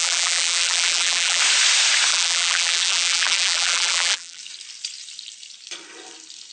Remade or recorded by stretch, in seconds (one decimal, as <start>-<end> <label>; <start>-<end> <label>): 0.0-1.4 remade; 1.4-2.1 recorded; 2.1-4.4 remade; 4.4-6.5 recorded